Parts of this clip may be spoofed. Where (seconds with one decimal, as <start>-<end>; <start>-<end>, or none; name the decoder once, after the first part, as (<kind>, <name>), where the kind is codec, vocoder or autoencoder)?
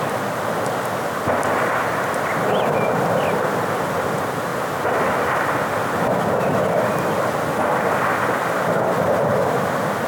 4.5-6.9 (vocoder, BigVGAN v2)